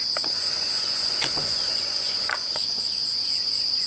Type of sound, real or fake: fake